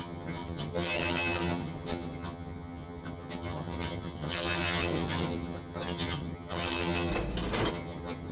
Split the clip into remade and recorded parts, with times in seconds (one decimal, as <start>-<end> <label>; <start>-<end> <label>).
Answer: 0.0-7.1 remade; 7.1-7.7 recorded; 7.7-8.3 remade